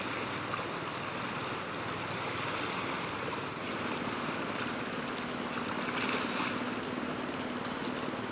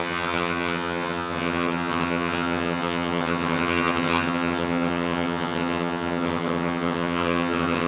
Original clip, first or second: first